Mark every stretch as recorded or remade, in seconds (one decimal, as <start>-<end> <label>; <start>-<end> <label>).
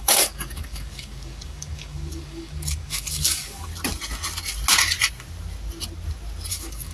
0.0-3.7 remade; 3.7-6.5 recorded; 6.5-6.9 remade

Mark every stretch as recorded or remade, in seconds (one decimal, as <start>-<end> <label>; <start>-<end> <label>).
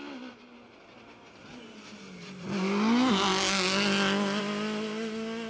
0.0-5.5 recorded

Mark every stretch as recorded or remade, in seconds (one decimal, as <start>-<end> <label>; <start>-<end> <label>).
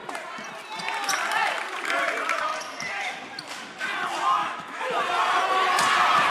0.0-4.4 recorded; 4.4-4.9 remade; 4.9-6.3 recorded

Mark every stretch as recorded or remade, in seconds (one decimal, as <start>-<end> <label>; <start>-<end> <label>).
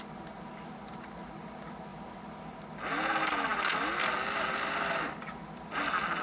0.0-1.9 recorded; 1.9-2.4 remade; 2.4-3.5 recorded; 3.5-5.2 remade; 5.2-6.2 recorded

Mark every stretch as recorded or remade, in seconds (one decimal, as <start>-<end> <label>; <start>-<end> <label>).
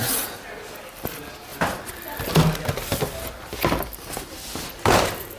0.0-5.4 recorded